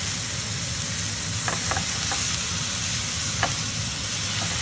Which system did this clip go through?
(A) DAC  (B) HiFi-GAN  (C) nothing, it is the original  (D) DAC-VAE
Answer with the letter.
C